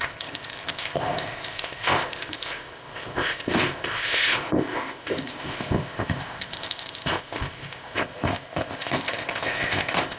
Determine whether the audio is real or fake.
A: fake